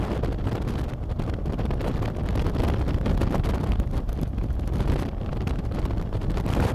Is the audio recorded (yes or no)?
yes